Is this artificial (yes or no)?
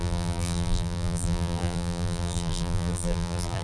yes